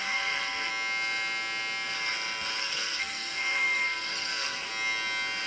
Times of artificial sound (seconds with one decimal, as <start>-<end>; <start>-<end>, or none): 0.0-0.7; 2.6-4.7